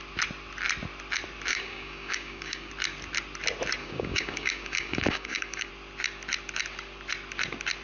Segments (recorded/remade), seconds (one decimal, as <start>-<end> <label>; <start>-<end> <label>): 0.0-1.5 recorded; 1.5-2.7 remade; 2.7-3.8 recorded; 3.8-5.7 remade; 5.7-7.8 recorded